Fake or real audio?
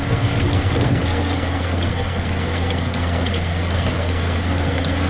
fake